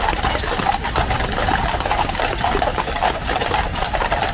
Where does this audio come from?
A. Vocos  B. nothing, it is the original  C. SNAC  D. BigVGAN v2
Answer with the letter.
B